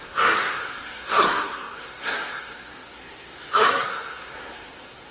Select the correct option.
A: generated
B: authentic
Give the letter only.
A